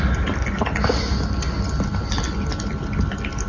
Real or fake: real